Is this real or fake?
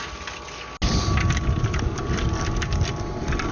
real